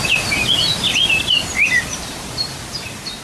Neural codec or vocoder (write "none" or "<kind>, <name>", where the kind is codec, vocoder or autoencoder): vocoder, BigVGAN v2